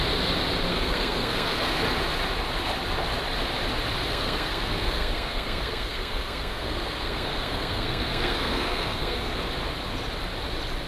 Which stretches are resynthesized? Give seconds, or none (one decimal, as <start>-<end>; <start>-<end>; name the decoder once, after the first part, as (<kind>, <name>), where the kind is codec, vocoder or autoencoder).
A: 0.7-1.8 (codec, SNAC); 4.1-9.4